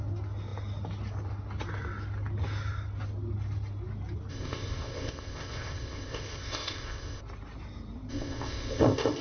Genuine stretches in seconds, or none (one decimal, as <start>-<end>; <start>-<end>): 0.0-4.3; 7.2-8.1